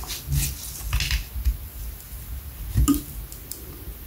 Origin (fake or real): real